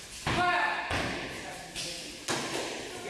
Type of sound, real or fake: real